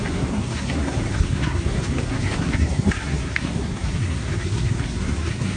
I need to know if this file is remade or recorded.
remade